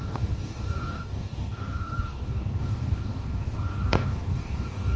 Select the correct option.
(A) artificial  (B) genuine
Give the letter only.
A